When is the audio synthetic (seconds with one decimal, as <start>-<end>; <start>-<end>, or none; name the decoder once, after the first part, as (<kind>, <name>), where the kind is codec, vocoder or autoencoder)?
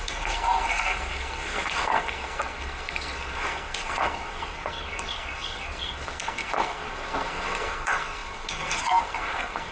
0.0-9.7 (codec, SNAC)